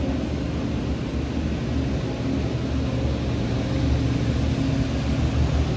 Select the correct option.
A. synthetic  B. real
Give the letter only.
B